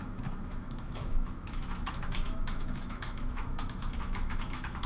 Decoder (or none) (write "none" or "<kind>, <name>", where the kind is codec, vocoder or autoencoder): autoencoder, DAC-VAE